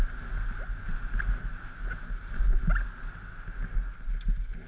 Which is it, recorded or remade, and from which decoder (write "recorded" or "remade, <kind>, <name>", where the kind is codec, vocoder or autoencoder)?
recorded